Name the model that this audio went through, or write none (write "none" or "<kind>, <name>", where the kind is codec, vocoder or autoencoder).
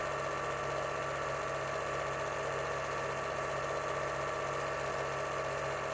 none